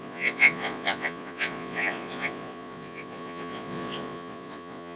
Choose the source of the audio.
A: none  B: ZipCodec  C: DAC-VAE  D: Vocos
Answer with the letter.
D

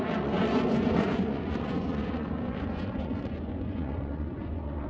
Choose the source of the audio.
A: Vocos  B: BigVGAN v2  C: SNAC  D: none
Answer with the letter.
A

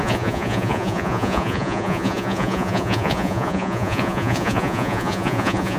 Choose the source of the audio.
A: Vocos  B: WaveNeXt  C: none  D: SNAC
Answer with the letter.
A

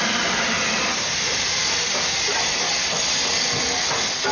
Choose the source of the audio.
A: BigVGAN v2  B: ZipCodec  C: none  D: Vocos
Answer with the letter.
C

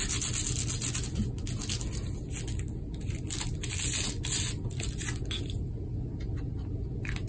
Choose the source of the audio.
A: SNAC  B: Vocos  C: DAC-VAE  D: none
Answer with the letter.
D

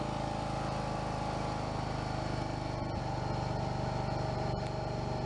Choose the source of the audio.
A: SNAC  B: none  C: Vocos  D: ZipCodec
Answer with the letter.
B